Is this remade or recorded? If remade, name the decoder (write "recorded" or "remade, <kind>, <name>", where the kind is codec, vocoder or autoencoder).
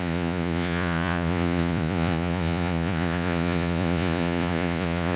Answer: remade, vocoder, Vocos